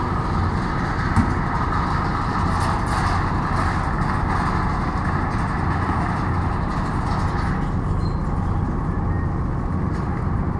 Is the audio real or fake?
real